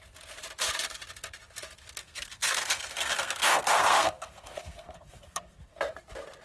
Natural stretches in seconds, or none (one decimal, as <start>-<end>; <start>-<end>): 0.0-2.0; 5.8-6.4